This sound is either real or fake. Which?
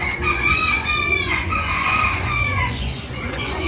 fake